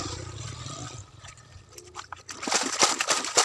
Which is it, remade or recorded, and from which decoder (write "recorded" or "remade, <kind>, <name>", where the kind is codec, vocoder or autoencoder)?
recorded